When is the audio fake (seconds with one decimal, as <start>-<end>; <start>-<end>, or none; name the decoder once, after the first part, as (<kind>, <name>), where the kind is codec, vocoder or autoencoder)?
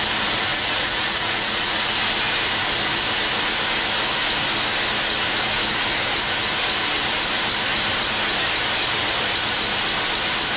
0.5-1.9 (vocoder, Vocos)